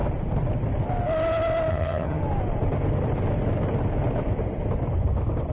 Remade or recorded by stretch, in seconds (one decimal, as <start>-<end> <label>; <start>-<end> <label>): 0.0-1.7 recorded; 1.7-2.2 remade; 2.2-5.5 recorded